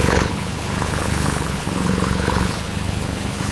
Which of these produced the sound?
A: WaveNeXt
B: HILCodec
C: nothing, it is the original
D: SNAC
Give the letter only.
B